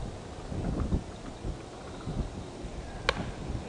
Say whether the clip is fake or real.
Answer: real